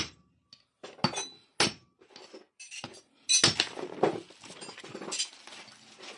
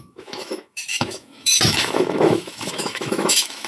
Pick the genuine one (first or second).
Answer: first